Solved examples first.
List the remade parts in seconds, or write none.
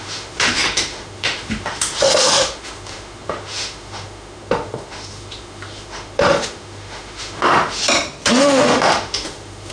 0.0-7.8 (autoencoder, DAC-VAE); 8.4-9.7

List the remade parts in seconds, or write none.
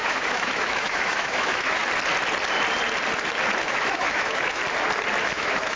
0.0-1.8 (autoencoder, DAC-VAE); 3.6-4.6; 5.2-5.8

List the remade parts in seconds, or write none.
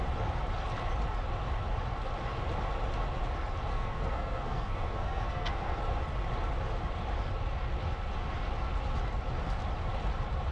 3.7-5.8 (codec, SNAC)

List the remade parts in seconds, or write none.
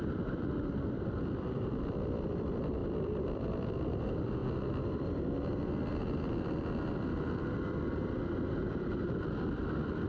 0.0-4.4 (vocoder, BigVGAN v2); 8.7-10.1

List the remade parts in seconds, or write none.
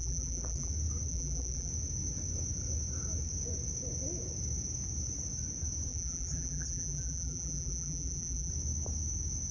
0.0-0.7 (vocoder, BigVGAN v2); 1.1-1.7; 5.9-8.5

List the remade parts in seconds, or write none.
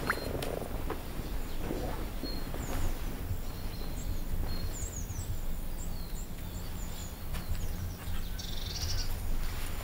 none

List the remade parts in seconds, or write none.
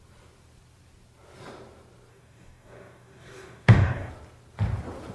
2.1-4.1 (codec, DAC)